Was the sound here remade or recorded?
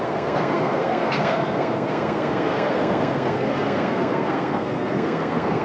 remade